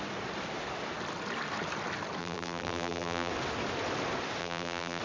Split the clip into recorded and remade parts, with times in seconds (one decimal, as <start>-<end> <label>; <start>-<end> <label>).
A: 0.0-2.2 recorded; 2.2-3.3 remade; 3.3-4.4 recorded; 4.4-5.0 remade